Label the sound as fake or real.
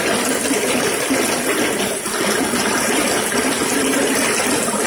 real